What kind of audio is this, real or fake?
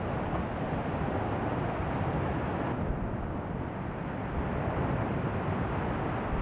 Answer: real